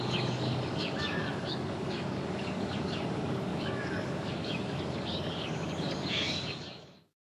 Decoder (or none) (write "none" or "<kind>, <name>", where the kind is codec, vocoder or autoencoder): codec, DAC